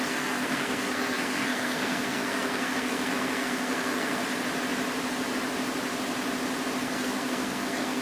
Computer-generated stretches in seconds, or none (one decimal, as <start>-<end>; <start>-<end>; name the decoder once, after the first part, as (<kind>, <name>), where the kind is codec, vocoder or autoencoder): 0.0-4.2 (codec, SNAC); 6.8-8.0